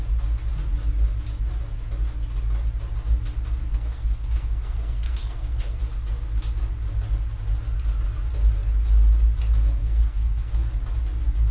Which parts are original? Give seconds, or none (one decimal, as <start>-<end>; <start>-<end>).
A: 0.0-3.7; 5.8-9.8; 10.7-11.5